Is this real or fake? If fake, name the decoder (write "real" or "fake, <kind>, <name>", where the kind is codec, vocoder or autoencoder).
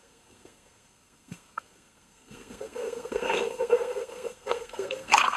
fake, codec, SNAC